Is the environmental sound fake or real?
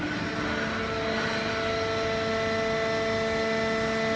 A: real